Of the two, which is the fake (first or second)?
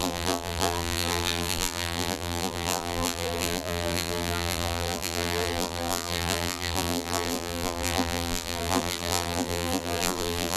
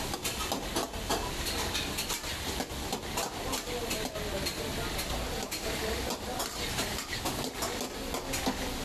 first